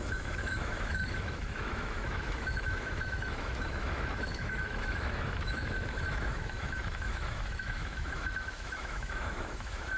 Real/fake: fake